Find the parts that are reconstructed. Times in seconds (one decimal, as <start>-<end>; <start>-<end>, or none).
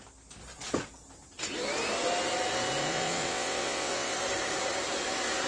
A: 2.8-4.1